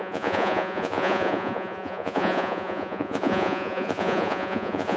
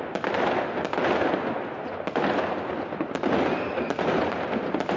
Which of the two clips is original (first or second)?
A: second